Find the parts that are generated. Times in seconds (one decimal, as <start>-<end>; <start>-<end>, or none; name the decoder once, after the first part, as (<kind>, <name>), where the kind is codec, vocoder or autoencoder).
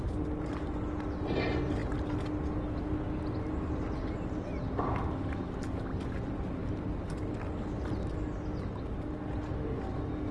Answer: none